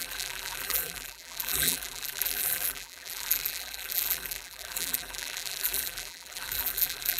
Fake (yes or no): yes